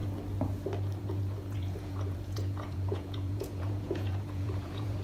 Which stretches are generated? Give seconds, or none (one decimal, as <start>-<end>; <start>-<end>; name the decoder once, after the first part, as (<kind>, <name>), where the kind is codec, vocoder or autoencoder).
1.0-5.0 (vocoder, Vocos)